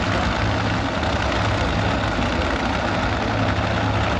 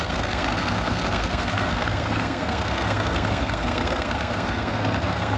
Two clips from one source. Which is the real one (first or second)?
first